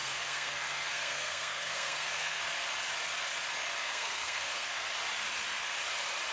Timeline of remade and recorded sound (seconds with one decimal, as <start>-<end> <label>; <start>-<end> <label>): 0.0-2.4 remade; 2.4-3.8 recorded; 3.8-4.9 remade; 4.9-6.3 recorded